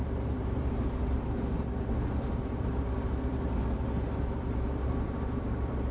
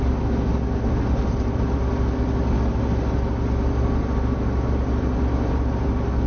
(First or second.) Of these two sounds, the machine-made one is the first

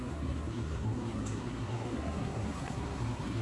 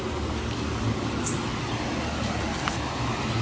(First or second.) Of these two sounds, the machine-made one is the first